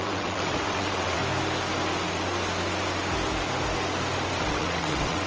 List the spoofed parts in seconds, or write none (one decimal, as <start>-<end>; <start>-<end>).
0.0-1.2; 4.4-5.3